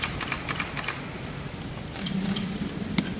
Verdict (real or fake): real